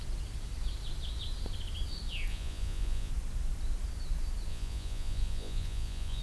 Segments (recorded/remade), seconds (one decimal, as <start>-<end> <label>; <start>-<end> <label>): 0.0-2.3 recorded; 2.3-3.1 remade; 3.1-4.5 recorded; 4.5-6.2 remade